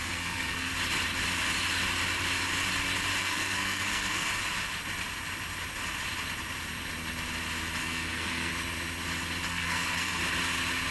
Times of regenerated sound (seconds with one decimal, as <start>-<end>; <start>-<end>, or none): 0.0-0.7; 3.2-4.3; 7.8-8.5; 9.5-10.2